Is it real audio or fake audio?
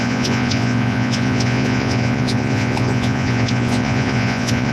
fake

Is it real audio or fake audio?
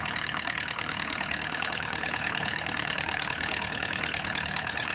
fake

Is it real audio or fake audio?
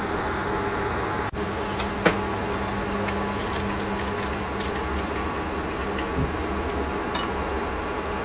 real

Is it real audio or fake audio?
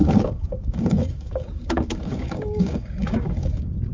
fake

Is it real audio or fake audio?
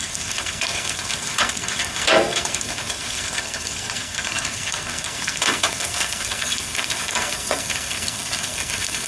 fake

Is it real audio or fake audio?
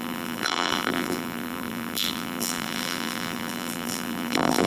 fake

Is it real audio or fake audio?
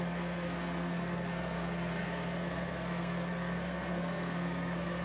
fake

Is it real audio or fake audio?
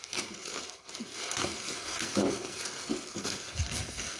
fake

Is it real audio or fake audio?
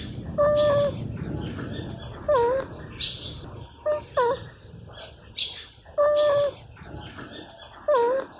real